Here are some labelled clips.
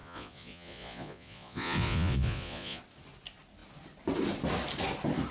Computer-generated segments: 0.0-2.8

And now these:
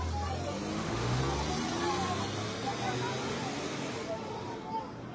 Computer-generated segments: 0.7-1.2

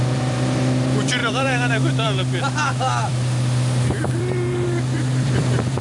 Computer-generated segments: 0.0-5.8

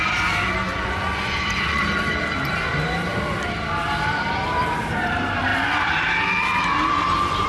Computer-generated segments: 0.6-1.8

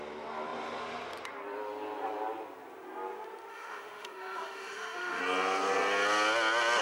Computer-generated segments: 3.5-5.2

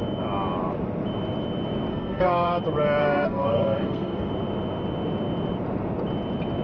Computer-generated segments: 1.9-2.6; 3.0-4.3